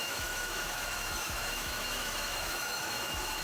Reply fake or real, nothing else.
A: fake